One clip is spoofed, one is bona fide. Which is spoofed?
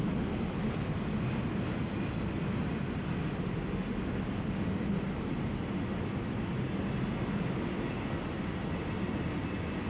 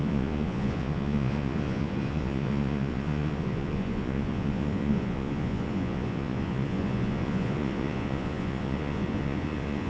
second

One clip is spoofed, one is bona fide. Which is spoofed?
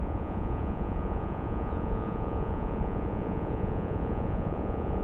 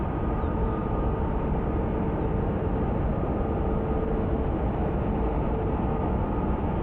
first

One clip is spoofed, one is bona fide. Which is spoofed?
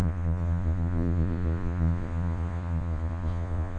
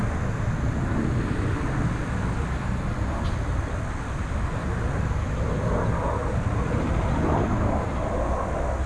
first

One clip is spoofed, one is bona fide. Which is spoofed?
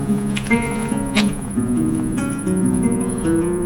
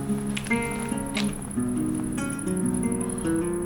first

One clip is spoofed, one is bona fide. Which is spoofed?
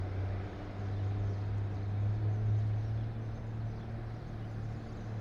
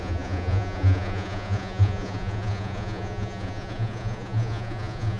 second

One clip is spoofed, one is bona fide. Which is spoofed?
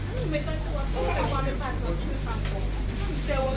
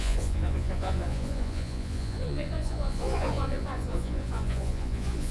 second